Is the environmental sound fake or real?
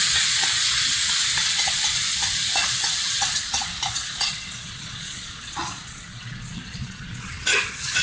fake